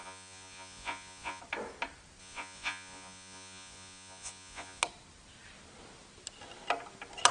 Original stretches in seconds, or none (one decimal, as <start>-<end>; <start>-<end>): 1.4-2.2; 4.8-7.3